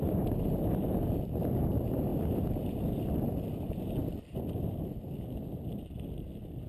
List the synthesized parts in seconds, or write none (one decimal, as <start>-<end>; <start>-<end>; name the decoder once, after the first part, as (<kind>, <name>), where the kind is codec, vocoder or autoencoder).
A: 2.1-6.1 (vocoder, BigVGAN v2)